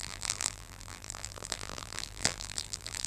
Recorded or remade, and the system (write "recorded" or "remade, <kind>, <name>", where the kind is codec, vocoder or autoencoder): remade, vocoder, BigVGAN v2